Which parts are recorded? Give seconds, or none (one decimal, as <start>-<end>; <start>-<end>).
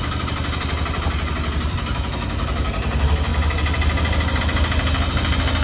0.0-5.6